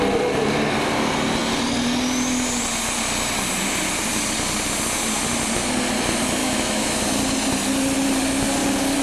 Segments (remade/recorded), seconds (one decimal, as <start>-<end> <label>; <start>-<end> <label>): 0.0-6.4 recorded; 6.4-7.0 remade; 7.0-9.0 recorded